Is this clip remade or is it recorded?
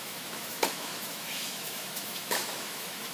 remade